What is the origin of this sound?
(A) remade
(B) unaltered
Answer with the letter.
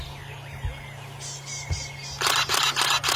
B